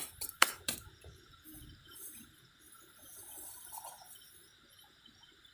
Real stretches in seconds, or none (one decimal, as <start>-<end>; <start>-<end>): 2.3-5.5